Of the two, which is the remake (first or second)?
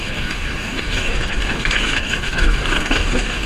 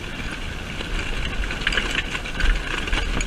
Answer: first